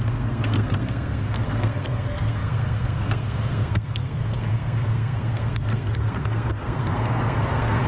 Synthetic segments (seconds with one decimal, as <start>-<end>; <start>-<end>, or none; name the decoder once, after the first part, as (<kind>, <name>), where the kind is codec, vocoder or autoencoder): 0.0-7.9 (codec, SNAC)